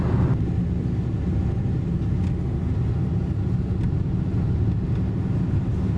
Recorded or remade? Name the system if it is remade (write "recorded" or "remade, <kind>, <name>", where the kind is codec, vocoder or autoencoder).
recorded